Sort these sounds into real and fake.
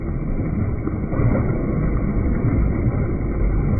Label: real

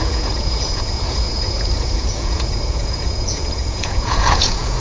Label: fake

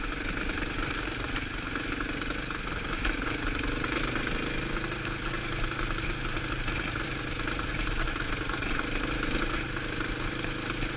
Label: real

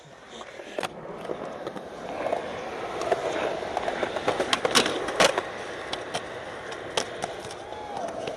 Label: real